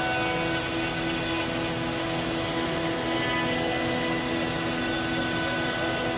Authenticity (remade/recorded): recorded